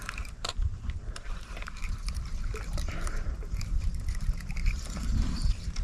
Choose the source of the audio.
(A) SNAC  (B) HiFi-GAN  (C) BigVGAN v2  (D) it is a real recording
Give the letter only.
C